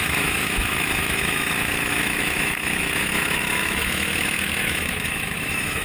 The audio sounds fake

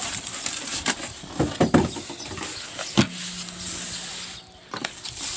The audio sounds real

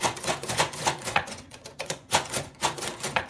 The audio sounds fake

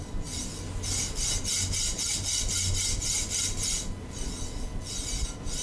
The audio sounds real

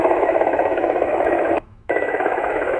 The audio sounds fake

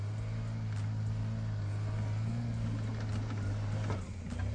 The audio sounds real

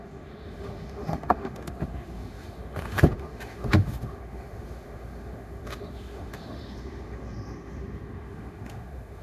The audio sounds fake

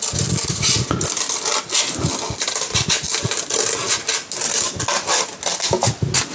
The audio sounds real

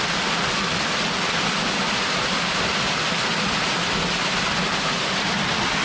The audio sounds real